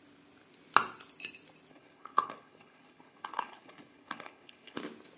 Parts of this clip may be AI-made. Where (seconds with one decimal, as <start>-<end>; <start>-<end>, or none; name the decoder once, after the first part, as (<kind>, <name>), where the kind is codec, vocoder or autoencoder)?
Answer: 1.7-4.8 (codec, HILCodec)

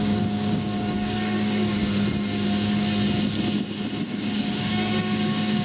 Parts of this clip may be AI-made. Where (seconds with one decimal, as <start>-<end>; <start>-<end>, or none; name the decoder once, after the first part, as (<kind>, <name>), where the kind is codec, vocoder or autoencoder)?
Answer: 0.0-1.8 (codec, DAC); 4.1-5.6

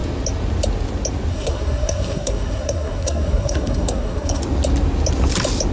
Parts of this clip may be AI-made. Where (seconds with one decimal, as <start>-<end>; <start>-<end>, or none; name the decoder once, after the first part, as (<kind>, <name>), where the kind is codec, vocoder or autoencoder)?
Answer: 1.3-4.4 (codec, SNAC)

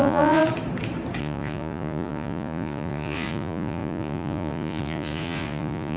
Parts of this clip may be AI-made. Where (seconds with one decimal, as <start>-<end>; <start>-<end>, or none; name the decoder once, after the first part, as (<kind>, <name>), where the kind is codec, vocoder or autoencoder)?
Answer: 0.0-0.4 (vocoder, Vocos); 1.2-6.0

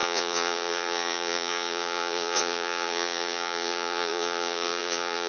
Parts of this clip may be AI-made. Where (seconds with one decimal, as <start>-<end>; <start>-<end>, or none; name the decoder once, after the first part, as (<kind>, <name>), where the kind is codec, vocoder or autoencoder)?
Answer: 0.0-5.3 (vocoder, Vocos)

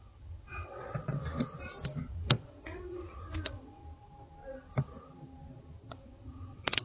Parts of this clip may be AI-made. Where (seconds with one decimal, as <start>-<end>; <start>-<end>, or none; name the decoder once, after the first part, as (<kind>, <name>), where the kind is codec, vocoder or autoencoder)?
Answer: 0.0-1.2 (vocoder, WaveNeXt); 2.1-3.8; 5.9-6.8

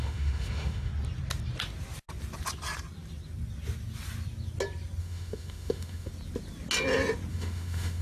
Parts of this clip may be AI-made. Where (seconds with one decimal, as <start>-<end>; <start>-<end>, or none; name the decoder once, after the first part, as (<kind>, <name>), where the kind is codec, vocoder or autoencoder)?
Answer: 0.0-0.9 (autoencoder, DAC-VAE); 5.0-6.1; 7.3-8.0